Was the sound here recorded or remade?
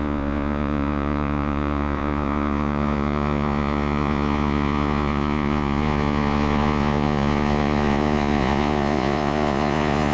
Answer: remade